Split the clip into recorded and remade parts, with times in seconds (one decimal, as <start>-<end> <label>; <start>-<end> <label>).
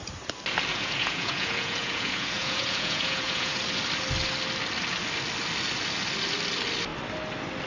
0.0-0.7 recorded; 0.7-3.6 remade; 3.6-7.7 recorded